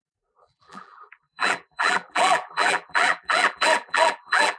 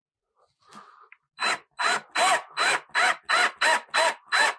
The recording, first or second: second